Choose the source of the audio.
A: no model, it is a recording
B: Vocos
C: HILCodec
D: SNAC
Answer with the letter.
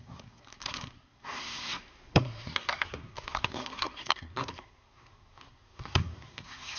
D